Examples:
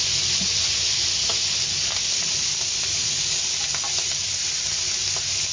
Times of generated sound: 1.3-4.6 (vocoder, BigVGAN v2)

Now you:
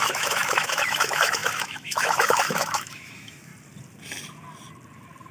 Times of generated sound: 0.0-3.5 (autoencoder, DAC-VAE)